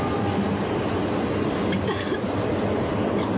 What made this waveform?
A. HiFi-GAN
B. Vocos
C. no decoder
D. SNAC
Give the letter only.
C